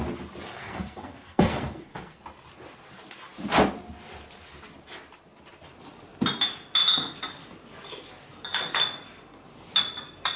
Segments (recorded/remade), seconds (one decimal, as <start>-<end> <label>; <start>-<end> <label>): 0.0-0.5 recorded; 0.5-2.2 remade; 2.2-10.4 recorded